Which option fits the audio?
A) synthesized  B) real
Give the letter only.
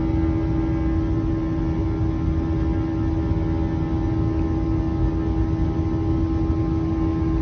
B